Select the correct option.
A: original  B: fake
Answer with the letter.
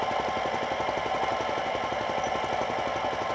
A